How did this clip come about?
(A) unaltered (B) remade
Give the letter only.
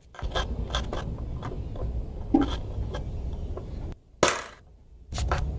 A